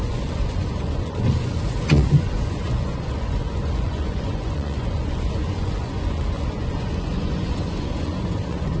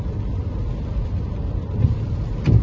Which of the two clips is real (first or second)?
second